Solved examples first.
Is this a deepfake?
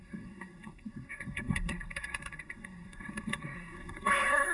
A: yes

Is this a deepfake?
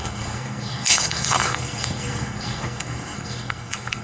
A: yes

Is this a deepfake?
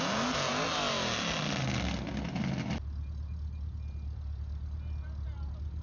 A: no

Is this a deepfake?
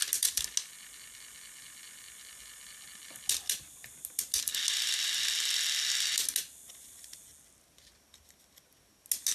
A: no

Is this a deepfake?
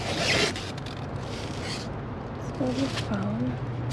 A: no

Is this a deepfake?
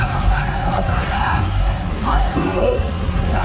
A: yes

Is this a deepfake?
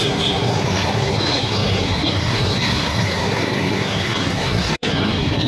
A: yes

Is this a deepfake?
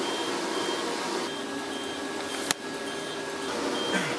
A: no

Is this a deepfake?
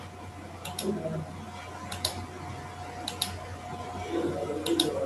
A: no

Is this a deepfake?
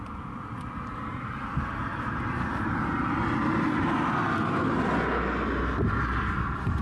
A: no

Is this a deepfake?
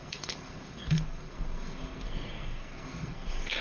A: yes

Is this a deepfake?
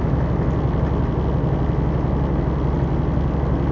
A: no